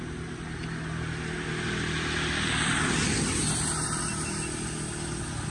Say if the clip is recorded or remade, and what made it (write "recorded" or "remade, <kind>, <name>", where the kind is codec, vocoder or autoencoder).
recorded